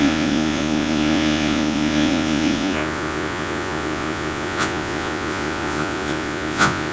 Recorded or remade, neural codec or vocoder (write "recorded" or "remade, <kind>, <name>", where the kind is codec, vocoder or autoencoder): remade, vocoder, Vocos